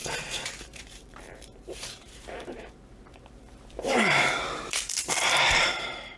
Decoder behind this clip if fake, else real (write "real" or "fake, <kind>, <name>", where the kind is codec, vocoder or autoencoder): fake, vocoder, BigVGAN v2